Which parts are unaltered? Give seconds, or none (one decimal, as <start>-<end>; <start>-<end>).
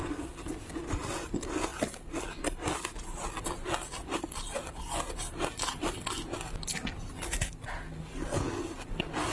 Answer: 0.0-9.3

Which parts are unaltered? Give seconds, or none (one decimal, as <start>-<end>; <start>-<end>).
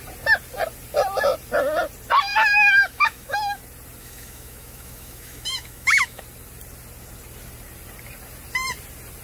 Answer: 0.0-2.3; 3.6-4.0; 6.2-9.2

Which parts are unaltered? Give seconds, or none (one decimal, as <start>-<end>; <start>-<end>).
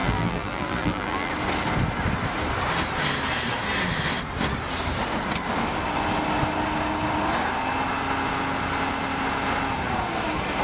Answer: 1.3-10.6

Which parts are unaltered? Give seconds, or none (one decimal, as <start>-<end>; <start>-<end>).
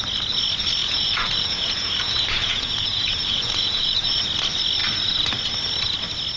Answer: 0.0-0.8; 4.2-6.4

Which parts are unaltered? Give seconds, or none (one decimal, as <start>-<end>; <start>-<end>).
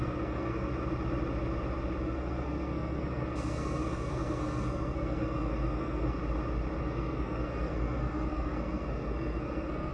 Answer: 0.7-2.0; 6.2-6.8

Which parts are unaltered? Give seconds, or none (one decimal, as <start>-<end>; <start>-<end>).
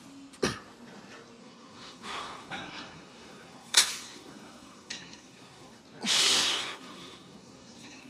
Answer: 0.0-1.4; 5.8-6.2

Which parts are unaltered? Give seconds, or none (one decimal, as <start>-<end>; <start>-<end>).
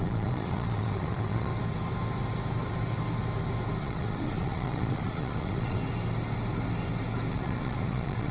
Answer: 1.5-3.8; 5.8-7.3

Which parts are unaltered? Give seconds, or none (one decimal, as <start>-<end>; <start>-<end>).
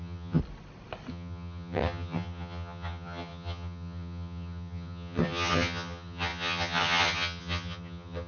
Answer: 0.4-1.1